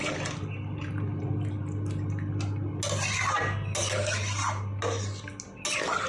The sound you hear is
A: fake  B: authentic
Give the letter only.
B